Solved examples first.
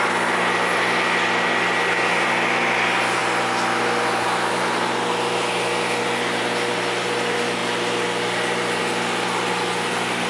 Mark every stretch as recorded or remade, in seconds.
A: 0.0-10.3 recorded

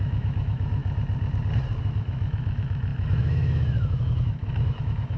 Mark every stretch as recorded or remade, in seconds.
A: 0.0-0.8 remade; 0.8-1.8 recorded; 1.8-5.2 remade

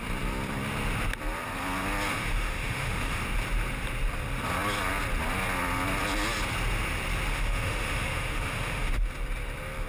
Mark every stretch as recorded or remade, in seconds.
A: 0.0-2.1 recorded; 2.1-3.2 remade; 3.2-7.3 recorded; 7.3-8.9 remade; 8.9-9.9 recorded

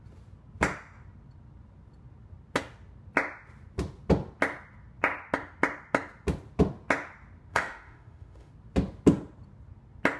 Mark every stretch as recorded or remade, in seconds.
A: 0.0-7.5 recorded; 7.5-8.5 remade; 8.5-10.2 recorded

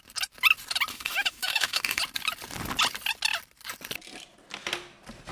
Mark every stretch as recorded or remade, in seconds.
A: 0.0-0.9 recorded; 0.9-2.0 remade; 2.0-5.3 recorded

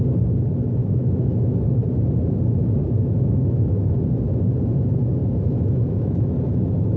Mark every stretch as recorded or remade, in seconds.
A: 0.0-0.8 recorded; 0.8-1.6 remade; 1.6-2.8 recorded; 2.8-3.9 remade; 3.9-5.2 recorded; 5.2-6.3 remade; 6.3-7.0 recorded